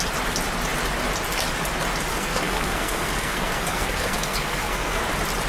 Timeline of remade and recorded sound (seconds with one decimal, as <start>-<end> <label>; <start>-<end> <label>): 0.0-2.1 recorded; 2.1-5.0 remade; 5.0-5.5 recorded